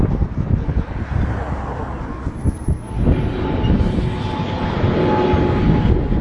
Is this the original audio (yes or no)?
yes